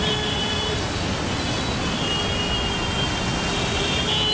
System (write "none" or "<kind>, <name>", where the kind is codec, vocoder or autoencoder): none